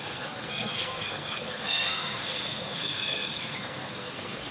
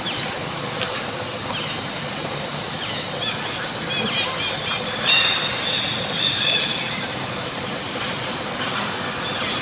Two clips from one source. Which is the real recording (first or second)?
second